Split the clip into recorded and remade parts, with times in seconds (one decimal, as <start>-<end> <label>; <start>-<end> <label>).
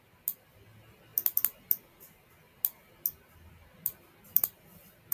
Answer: 0.0-5.1 recorded